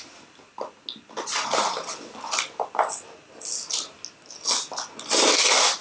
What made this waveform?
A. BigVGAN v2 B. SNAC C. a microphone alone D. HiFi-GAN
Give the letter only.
C